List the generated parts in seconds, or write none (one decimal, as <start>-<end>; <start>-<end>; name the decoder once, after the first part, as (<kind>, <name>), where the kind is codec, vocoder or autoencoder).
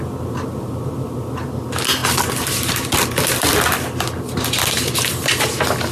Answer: none